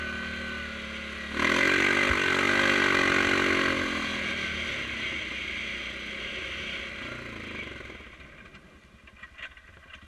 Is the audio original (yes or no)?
yes